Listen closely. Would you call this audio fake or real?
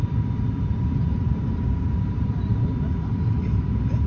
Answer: real